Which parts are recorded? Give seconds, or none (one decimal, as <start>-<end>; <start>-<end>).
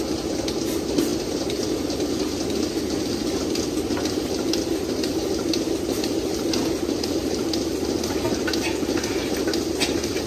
0.0-10.3